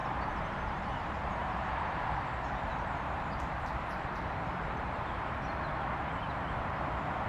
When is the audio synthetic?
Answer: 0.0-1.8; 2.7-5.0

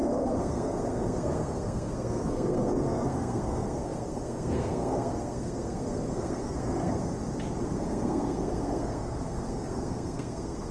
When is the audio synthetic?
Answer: 0.0-7.1; 7.6-10.7

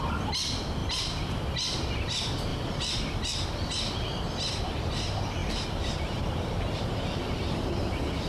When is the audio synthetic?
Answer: 2.5-3.7; 5.4-6.8

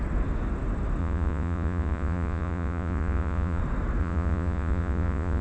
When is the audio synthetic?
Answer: 1.0-3.6; 4.0-5.4